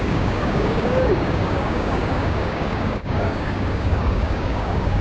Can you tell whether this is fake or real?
fake